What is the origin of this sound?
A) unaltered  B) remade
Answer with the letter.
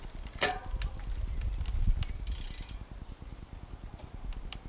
A